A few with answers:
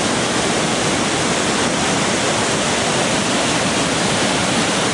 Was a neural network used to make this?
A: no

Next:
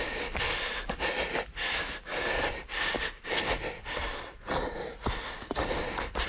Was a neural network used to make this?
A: no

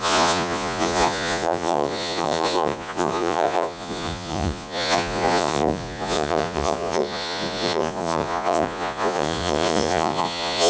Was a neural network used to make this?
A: yes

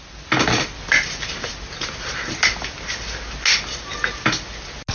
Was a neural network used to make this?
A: no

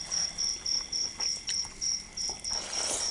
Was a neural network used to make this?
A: no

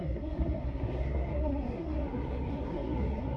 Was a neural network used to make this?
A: yes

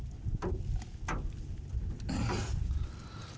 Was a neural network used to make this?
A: no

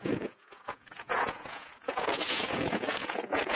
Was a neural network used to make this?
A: yes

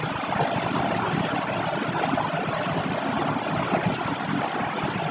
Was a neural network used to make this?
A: no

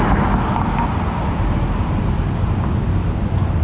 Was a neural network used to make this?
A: no